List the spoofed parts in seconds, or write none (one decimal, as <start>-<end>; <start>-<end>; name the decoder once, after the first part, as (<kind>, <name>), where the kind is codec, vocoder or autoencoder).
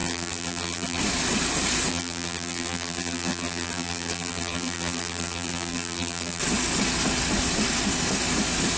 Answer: 0.0-1.0 (vocoder, BigVGAN v2); 1.9-6.4